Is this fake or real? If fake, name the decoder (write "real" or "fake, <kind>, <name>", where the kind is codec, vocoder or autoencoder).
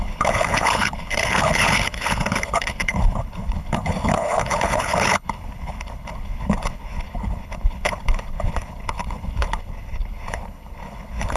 fake, codec, HILCodec